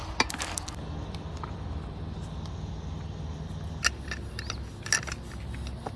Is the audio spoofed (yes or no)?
no